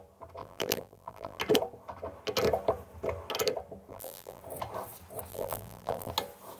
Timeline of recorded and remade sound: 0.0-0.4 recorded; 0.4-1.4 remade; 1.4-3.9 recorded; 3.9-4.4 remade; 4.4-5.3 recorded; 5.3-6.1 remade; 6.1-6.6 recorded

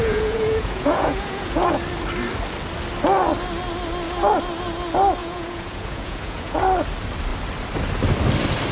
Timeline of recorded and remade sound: 0.0-1.8 remade; 1.8-5.2 recorded; 5.2-6.6 remade; 6.6-8.7 recorded

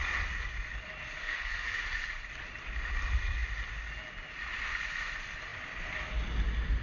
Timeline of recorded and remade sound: 0.0-1.2 recorded; 1.2-1.8 remade; 1.8-6.8 recorded

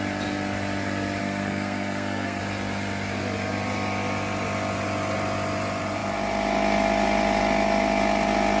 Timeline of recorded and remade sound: 0.0-1.2 recorded; 1.2-2.4 remade; 2.4-8.6 recorded

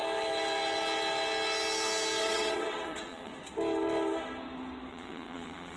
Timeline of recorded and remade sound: 0.0-2.2 recorded; 2.2-3.3 remade; 3.3-4.9 recorded; 4.9-5.8 remade

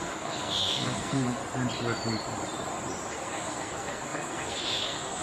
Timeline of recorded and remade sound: 0.0-1.4 remade; 1.4-3.1 recorded; 3.1-5.2 remade

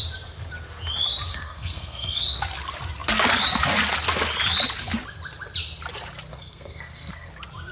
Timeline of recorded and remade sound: 0.0-1.3 recorded; 1.3-2.2 remade; 2.2-6.3 recorded; 6.3-7.3 remade; 7.3-7.7 recorded